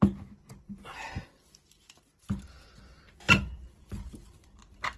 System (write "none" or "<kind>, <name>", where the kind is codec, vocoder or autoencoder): none